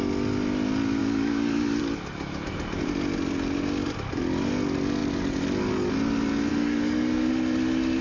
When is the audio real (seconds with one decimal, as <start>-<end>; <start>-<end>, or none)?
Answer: 0.0-1.0; 1.8-6.5; 7.3-8.0